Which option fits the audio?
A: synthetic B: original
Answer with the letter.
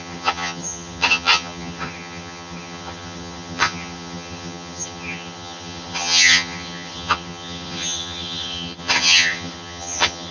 A